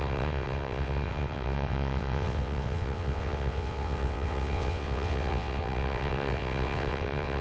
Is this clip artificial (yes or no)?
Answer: yes